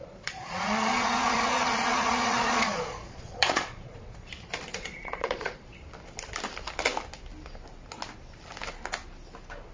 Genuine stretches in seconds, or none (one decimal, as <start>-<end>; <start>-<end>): 4.3-4.7; 5.7-9.7

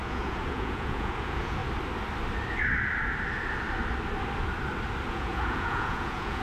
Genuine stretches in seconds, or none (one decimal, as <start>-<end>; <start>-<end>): 1.6-5.1

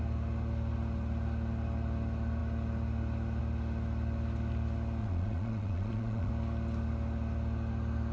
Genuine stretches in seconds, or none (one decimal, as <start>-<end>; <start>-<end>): 0.0-5.0; 6.3-8.1